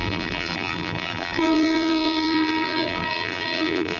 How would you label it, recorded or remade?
remade